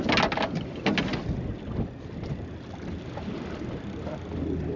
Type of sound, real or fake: real